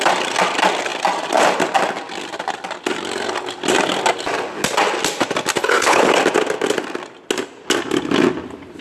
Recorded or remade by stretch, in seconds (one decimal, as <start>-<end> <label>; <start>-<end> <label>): 0.0-5.6 recorded; 5.6-6.1 remade; 6.1-8.8 recorded